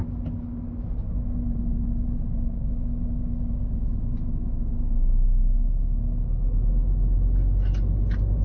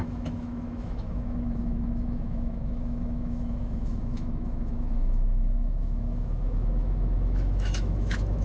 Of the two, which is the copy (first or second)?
second